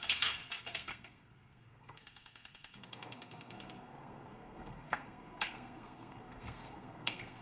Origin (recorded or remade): remade